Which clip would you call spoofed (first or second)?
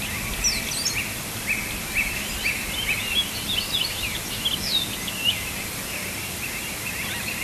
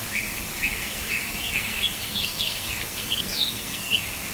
second